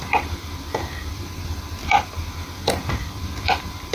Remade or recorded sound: remade